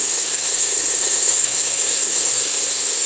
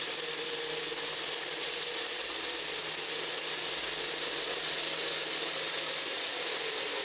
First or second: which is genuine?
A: second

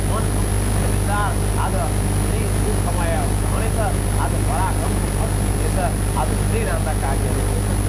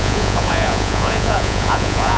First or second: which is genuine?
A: first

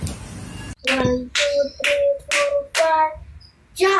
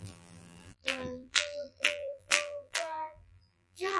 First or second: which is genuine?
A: first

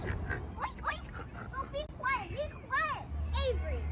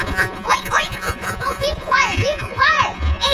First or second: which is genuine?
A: first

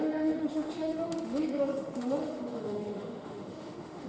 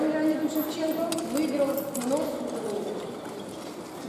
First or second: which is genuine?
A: second